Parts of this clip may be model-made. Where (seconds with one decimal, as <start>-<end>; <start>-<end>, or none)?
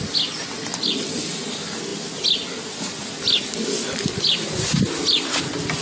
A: none